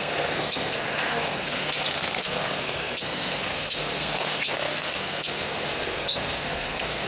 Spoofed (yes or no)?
yes